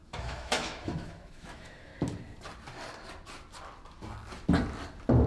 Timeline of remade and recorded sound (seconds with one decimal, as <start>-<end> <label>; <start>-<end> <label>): 0.0-1.9 remade; 1.9-5.3 recorded